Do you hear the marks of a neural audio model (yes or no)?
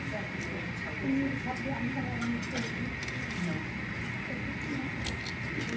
no